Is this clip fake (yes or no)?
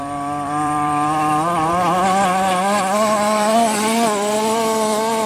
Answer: yes